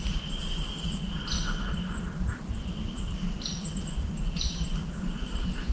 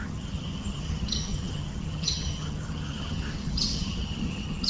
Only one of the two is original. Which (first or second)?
first